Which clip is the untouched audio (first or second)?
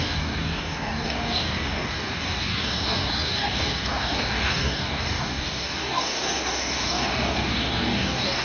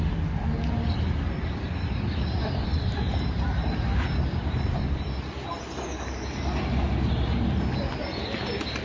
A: second